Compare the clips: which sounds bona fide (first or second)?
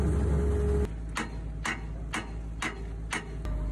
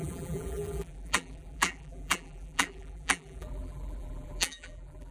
first